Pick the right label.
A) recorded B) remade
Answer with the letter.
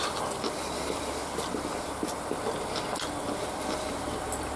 A